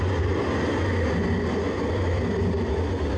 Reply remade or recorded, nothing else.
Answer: recorded